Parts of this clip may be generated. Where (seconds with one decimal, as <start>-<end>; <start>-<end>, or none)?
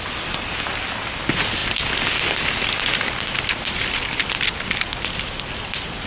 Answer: none